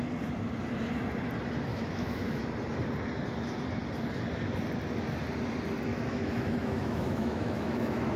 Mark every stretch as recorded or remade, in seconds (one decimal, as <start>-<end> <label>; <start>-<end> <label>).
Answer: 0.0-1.7 recorded; 1.7-2.4 remade; 2.4-5.9 recorded; 5.9-8.2 remade